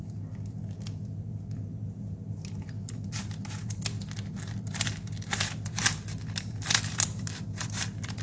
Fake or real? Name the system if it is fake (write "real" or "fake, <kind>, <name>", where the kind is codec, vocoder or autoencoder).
real